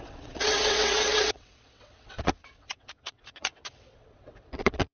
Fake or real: fake